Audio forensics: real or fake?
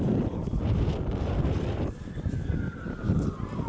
real